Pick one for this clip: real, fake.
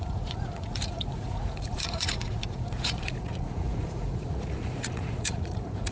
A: fake